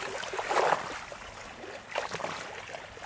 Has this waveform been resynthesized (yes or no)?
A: no